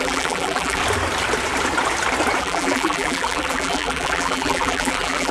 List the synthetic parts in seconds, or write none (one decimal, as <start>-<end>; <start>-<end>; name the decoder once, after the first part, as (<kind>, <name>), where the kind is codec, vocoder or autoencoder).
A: 0.0-0.8 (vocoder, BigVGAN v2); 2.4-5.3